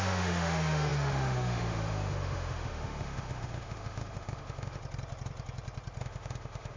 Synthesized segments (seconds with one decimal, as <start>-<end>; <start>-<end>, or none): 0.0-4.8; 6.0-6.8

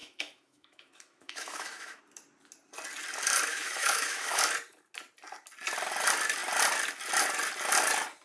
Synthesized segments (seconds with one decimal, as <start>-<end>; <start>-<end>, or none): 0.0-2.0; 3.5-4.4